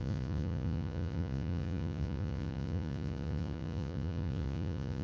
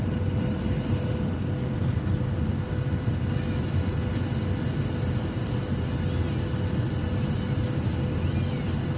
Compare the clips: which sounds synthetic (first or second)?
first